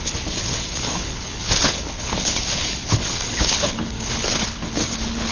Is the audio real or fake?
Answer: fake